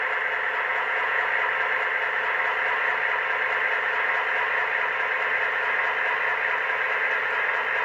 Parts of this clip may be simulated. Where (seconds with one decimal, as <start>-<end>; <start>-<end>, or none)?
0.7-1.3